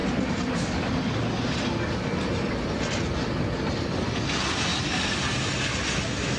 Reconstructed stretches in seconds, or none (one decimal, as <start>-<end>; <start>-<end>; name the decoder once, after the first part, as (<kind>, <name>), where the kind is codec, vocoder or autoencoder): none